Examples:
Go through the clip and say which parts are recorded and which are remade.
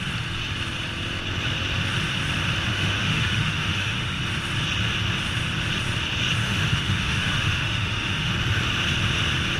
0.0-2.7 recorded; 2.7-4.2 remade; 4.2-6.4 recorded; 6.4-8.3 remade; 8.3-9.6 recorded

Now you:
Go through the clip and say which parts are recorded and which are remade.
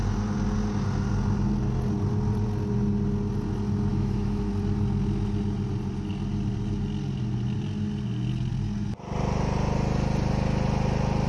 0.0-3.9 recorded; 3.9-4.5 remade; 4.5-11.3 recorded